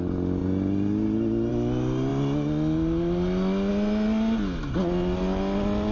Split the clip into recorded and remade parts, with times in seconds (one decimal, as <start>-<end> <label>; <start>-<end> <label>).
0.0-5.9 recorded